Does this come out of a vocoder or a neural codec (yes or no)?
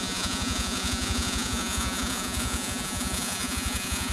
yes